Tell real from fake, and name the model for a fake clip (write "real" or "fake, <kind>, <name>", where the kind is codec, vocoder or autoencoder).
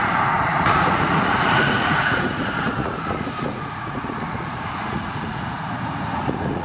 fake, vocoder, Vocos